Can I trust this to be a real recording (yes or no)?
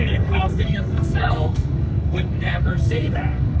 no